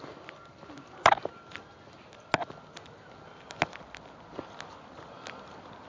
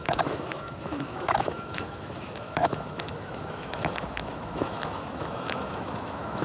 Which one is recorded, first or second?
first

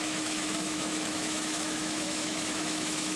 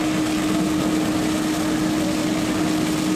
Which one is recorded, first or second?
second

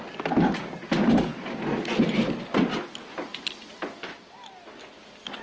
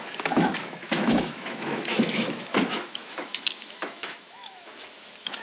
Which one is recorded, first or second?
first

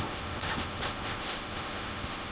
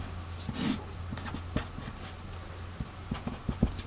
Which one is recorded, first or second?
second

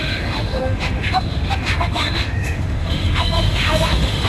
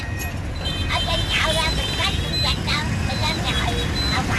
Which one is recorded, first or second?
second